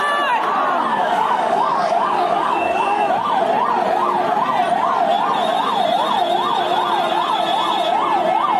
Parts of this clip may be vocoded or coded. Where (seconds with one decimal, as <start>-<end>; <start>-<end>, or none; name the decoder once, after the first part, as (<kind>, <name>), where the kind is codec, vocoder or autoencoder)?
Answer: 0.9-3.1 (codec, DAC)